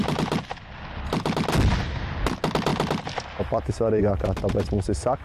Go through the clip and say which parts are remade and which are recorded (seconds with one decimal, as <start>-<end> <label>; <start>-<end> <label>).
0.0-2.2 remade; 2.2-2.7 recorded; 2.7-4.0 remade; 4.0-5.2 recorded